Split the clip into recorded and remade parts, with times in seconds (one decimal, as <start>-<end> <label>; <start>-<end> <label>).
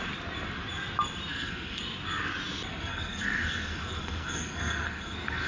0.0-1.3 recorded; 1.3-1.8 remade; 1.8-2.7 recorded; 2.7-5.5 remade